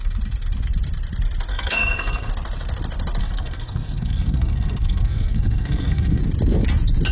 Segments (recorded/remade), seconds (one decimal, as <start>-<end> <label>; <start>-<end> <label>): 0.0-1.5 recorded; 1.5-2.3 remade; 2.3-3.2 recorded; 3.2-6.2 remade; 6.2-7.1 recorded